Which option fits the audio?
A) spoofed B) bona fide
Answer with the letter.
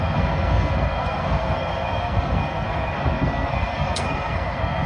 A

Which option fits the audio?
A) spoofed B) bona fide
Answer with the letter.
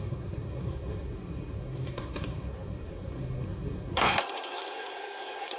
A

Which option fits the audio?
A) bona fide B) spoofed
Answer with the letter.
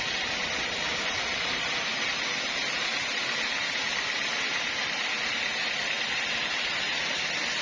A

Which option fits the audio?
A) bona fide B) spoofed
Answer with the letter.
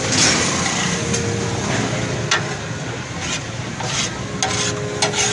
A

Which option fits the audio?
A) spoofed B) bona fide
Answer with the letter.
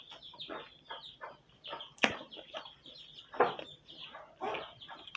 B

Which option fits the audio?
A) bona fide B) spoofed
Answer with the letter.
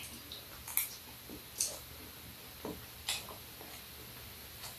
A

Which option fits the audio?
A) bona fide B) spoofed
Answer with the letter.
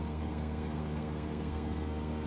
B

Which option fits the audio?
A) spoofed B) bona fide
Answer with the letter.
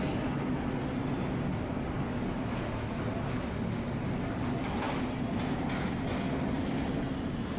B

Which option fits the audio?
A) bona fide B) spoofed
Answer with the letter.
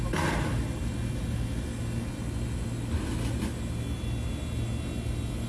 A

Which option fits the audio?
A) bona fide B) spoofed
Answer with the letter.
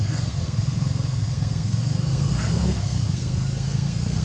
B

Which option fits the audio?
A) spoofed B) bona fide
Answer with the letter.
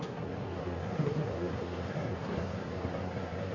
A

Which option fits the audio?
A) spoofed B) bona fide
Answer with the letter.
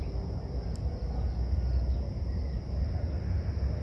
B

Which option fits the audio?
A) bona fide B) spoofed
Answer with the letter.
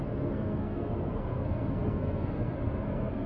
B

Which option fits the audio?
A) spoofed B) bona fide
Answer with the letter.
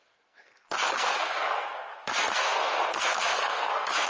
A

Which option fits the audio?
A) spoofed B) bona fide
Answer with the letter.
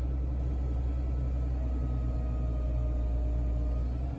B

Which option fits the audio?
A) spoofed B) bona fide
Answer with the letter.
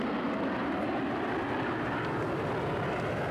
B